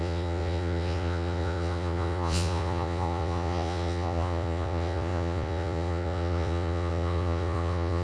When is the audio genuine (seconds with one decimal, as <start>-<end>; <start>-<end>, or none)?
none